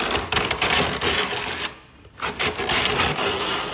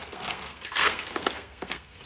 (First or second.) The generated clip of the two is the second